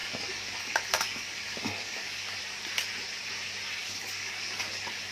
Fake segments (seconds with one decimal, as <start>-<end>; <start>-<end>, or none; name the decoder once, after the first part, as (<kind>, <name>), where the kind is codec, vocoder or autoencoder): 0.0-2.4 (codec, DAC); 3.8-5.1